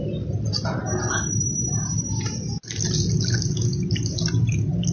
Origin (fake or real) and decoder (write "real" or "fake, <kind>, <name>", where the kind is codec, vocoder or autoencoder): real